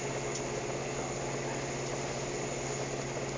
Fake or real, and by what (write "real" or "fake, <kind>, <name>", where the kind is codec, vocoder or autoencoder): real